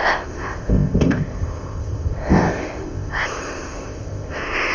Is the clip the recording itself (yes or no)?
no